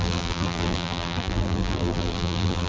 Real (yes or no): no